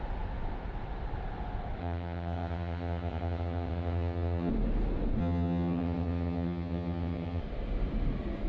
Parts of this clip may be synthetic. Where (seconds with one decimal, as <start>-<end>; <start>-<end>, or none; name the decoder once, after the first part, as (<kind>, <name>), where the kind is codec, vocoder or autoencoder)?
1.8-4.5 (vocoder, HiFi-GAN); 5.2-7.4